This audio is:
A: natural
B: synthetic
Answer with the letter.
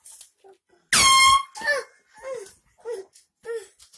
A